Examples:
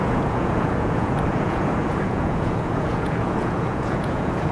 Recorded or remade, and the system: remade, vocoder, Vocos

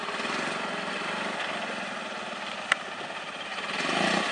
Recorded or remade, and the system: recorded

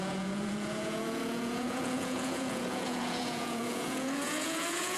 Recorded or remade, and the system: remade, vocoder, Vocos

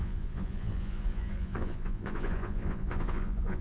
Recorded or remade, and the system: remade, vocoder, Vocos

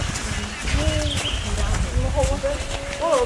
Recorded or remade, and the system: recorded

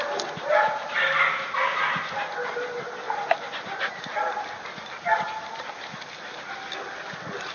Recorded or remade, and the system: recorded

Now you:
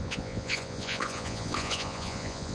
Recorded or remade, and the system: remade, vocoder, Vocos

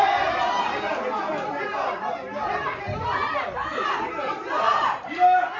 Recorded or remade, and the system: recorded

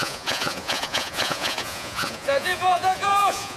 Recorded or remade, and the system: remade, vocoder, Vocos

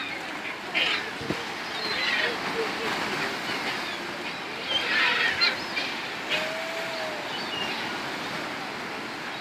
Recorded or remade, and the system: recorded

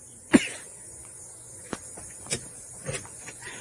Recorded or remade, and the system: remade, vocoder, Vocos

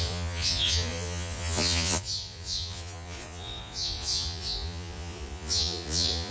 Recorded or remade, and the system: remade, vocoder, Vocos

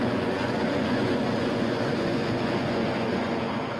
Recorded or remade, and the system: remade, vocoder, Vocos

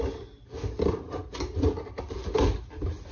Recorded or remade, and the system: recorded